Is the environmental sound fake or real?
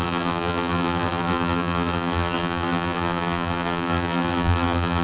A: fake